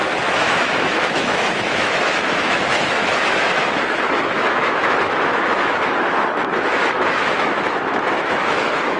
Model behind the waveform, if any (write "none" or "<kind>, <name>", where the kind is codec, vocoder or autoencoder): autoencoder, DAC-VAE